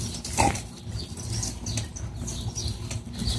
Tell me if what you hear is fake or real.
real